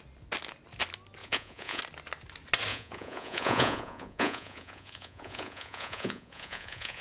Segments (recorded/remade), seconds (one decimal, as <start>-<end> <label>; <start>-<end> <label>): 0.0-1.2 recorded; 1.2-1.8 remade; 1.8-2.7 recorded; 2.7-7.0 remade